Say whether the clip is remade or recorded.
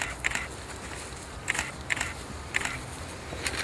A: recorded